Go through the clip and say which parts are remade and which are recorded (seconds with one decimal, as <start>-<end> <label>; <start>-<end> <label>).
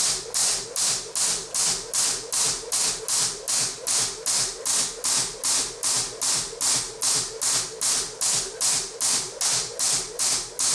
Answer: 0.0-10.7 recorded